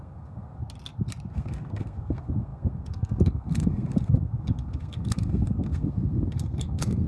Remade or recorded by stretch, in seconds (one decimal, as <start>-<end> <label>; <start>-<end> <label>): 0.0-0.6 remade; 0.6-1.3 recorded; 1.3-7.1 remade

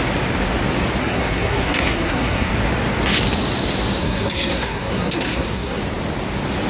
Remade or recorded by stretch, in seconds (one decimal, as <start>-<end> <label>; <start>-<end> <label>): 0.0-1.0 recorded; 1.0-2.5 remade; 2.5-4.0 recorded; 4.0-5.8 remade; 5.8-6.7 recorded

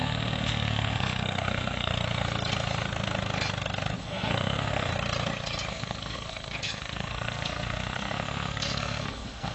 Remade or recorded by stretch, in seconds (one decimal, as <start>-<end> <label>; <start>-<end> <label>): 0.0-1.9 remade; 1.9-4.0 recorded; 4.0-4.9 remade; 4.9-5.7 recorded; 5.7-9.5 remade

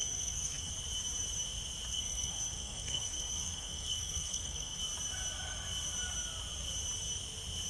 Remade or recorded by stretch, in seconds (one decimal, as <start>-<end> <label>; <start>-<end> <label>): 0.0-0.7 remade; 0.7-1.9 recorded; 1.9-4.8 remade; 4.8-7.7 recorded

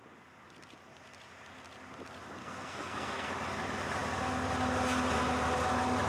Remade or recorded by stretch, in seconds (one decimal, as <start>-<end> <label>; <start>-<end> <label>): 0.0-2.4 recorded; 2.4-3.3 remade; 3.3-6.1 recorded

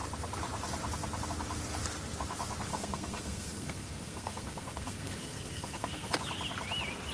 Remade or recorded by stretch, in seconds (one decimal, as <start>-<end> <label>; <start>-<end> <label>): 0.0-2.7 recorded; 2.7-6.1 remade; 6.1-7.1 recorded

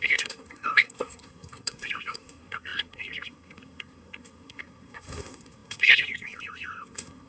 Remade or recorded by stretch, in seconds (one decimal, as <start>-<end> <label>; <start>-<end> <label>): 0.0-7.3 remade